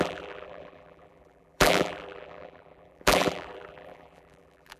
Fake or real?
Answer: fake